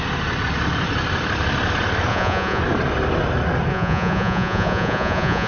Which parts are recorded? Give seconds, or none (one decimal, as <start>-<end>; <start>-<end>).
0.0-2.1; 2.6-3.7